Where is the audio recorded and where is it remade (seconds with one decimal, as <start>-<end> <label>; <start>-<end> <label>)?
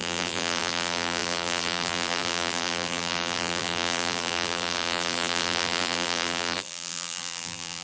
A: 0.0-7.8 remade